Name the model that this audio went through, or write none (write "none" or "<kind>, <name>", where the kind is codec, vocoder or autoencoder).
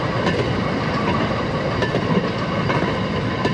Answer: none